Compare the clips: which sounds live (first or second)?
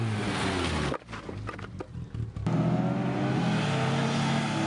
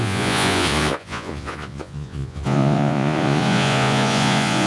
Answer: first